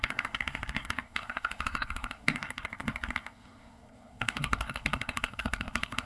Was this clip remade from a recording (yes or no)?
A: yes